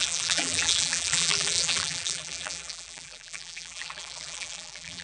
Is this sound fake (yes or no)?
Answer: yes